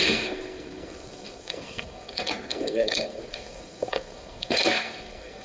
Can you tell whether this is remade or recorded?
remade